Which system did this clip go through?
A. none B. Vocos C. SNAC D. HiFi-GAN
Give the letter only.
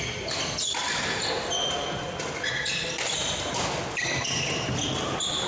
A